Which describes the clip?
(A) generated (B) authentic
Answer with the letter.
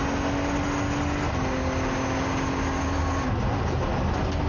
B